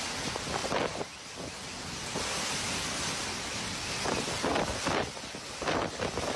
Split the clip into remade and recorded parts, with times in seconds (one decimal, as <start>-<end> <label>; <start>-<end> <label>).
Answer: 0.0-6.4 recorded